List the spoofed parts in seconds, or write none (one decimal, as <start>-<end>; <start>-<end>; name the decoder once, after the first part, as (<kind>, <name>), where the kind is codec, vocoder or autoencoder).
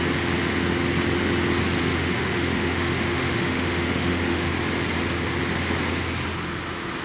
1.8-4.5 (autoencoder, DAC-VAE)